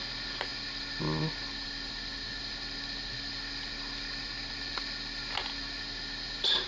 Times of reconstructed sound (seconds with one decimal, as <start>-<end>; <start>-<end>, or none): none